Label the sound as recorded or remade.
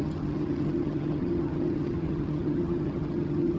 remade